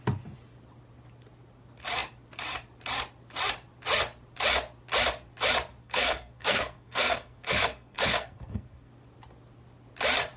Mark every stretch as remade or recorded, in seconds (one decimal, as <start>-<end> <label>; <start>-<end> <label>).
0.0-5.8 recorded; 5.8-8.9 remade; 8.9-10.4 recorded